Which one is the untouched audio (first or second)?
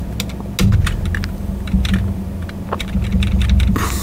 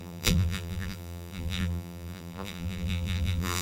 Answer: first